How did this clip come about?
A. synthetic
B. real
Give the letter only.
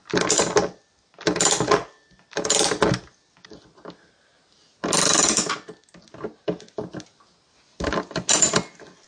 B